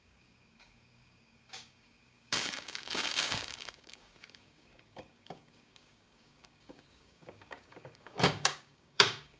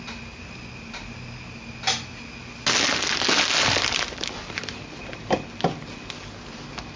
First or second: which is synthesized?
first